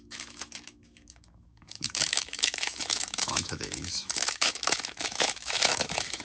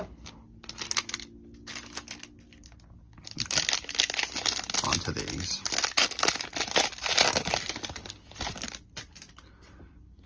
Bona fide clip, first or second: second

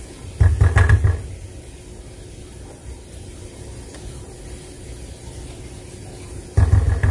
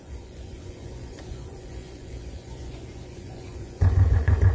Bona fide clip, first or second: first